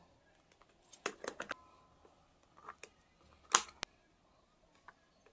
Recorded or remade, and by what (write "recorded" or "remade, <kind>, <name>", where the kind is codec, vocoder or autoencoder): recorded